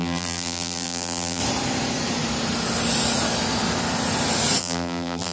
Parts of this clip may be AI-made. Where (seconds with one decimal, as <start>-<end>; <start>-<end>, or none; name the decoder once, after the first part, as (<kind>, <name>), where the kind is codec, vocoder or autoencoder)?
0.0-1.4 (vocoder, BigVGAN v2); 4.6-5.3